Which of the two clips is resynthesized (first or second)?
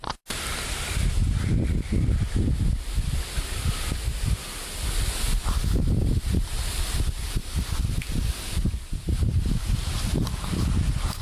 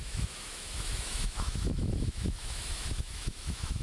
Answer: second